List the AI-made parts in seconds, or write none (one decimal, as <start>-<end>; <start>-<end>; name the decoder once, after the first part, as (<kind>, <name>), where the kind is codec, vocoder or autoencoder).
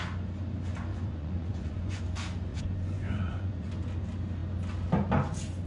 0.9-2.0 (vocoder, Vocos); 2.5-3.7